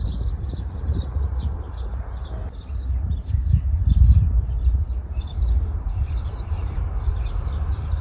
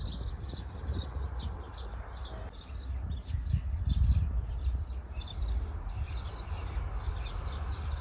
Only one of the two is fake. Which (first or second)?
first